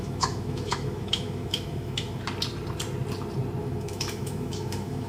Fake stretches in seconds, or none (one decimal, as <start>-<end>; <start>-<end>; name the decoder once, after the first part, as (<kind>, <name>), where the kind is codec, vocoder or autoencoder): 0.0-2.2 (autoencoder, DAC-VAE); 3.6-5.1